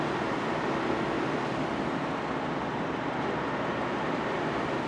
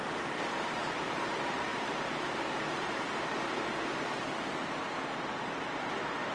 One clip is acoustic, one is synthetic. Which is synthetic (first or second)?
second